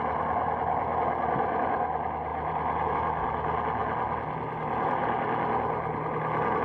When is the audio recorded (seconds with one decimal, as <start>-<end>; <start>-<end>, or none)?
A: 0.0-2.3; 2.9-6.6